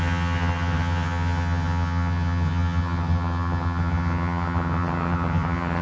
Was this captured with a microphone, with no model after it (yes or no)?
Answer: no